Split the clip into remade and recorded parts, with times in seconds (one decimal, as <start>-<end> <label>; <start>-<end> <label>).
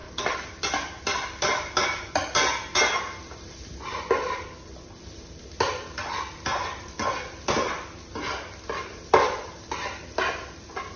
0.0-11.0 recorded